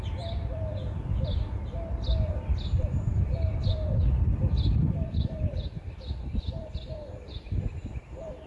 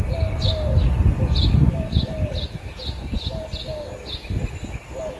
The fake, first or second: first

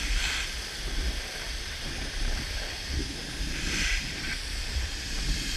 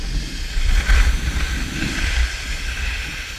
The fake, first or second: first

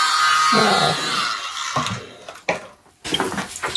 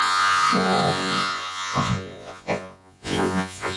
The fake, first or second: second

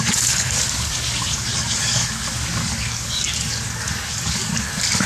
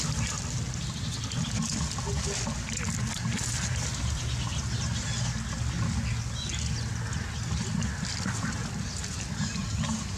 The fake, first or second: first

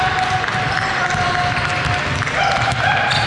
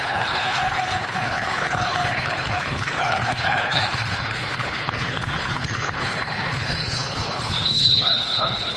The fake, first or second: second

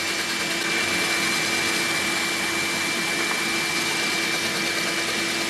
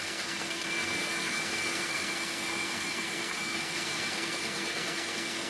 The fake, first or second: second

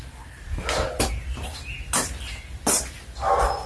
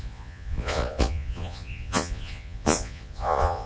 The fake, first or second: second